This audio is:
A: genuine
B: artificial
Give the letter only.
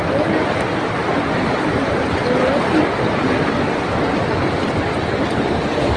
A